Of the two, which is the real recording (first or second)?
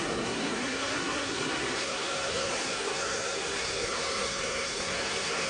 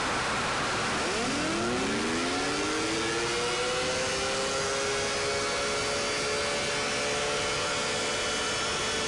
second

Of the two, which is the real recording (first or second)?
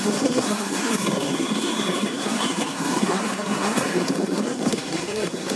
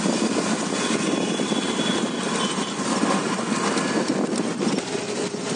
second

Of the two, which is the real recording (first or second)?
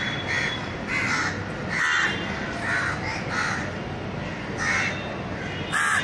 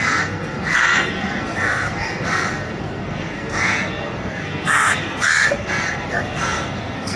first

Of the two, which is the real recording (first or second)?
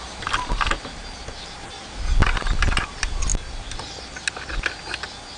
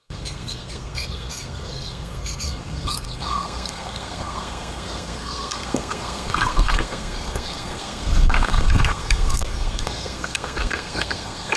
first